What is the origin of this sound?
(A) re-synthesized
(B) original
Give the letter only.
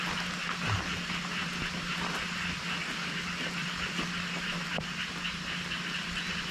B